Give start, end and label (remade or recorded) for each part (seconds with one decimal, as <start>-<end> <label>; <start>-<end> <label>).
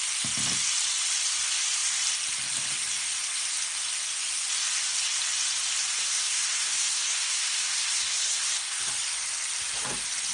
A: 0.0-6.0 recorded; 6.0-8.8 remade; 8.8-10.3 recorded